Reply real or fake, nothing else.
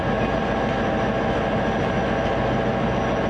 real